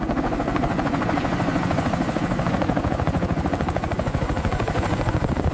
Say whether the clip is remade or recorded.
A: remade